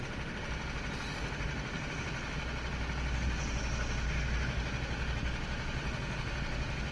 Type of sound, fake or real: real